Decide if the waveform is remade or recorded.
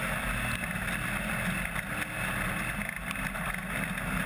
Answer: recorded